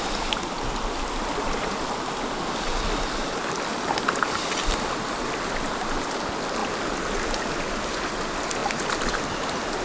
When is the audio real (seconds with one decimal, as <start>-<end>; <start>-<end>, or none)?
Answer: 0.0-9.8